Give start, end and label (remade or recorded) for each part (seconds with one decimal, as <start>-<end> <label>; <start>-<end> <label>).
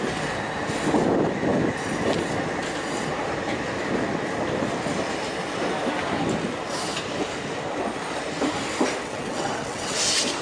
0.0-9.0 recorded; 9.0-10.0 remade; 10.0-10.4 recorded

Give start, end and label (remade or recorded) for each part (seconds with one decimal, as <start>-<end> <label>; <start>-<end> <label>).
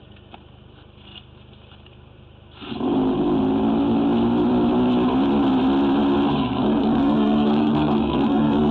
0.0-6.4 recorded; 6.4-8.7 remade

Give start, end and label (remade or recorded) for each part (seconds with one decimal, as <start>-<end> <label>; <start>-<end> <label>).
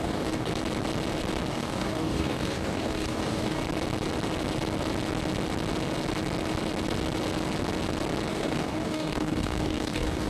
0.0-0.5 remade; 0.5-1.5 recorded; 1.5-3.6 remade; 3.6-8.3 recorded; 8.3-10.3 remade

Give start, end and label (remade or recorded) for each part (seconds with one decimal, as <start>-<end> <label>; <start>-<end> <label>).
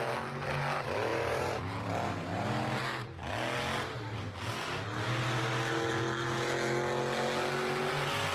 0.0-1.1 recorded; 1.1-1.6 remade; 1.6-8.3 recorded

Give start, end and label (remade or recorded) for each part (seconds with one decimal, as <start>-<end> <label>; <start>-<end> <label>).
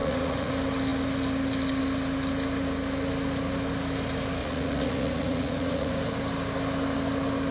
0.0-0.5 remade; 0.5-4.4 recorded; 4.4-5.9 remade; 5.9-7.5 recorded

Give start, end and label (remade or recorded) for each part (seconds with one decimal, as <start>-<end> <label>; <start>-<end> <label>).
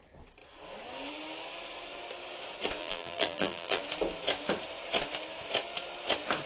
0.0-2.8 recorded; 2.8-3.8 remade; 3.8-6.5 recorded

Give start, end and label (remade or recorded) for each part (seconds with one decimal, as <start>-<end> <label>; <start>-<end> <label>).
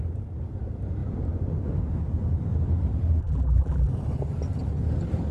0.0-3.2 recorded; 3.2-3.9 remade; 3.9-5.3 recorded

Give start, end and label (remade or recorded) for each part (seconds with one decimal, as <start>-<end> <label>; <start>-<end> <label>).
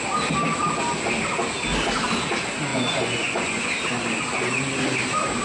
0.0-2.7 recorded; 2.7-3.7 remade; 3.7-5.4 recorded